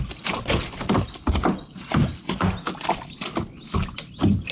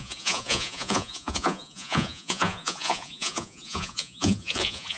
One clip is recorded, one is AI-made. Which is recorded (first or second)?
first